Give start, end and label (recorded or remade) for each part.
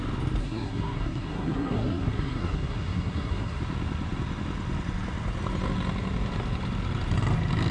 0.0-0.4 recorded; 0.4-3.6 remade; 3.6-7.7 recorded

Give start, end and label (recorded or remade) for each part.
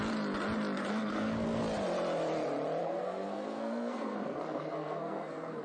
0.0-0.9 recorded; 0.9-1.6 remade; 1.6-2.8 recorded; 2.8-5.6 remade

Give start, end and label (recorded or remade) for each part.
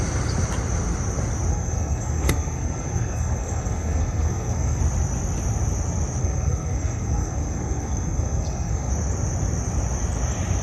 0.0-1.5 recorded; 1.5-4.8 remade; 4.8-6.2 recorded; 6.2-8.9 remade; 8.9-10.6 recorded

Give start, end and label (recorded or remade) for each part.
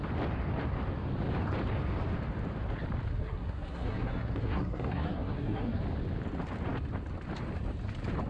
0.0-3.1 recorded; 3.1-5.8 remade; 5.8-8.3 recorded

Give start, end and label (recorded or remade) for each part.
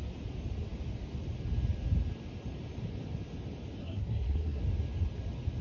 0.0-3.8 recorded; 3.8-4.6 remade; 4.6-5.6 recorded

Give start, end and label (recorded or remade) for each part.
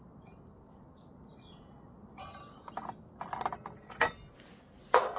0.0-5.2 recorded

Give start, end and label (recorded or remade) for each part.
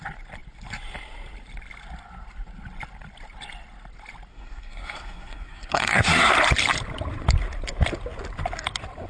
0.0-4.3 recorded; 4.3-6.3 remade; 6.3-9.1 recorded